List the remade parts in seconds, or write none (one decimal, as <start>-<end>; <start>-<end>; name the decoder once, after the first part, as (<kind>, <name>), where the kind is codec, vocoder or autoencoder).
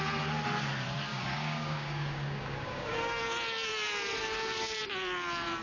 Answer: 1.1-3.2 (codec, DAC)